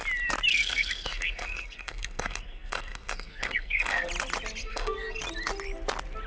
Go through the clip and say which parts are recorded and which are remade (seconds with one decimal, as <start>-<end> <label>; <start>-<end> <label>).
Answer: 0.0-0.5 recorded; 0.5-4.1 remade; 4.1-4.6 recorded; 4.6-5.2 remade; 5.2-6.3 recorded